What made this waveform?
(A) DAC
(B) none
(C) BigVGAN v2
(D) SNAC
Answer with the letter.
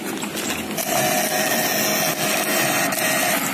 B